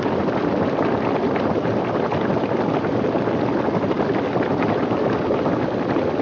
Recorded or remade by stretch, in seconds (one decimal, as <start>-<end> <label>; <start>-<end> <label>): 0.0-6.2 recorded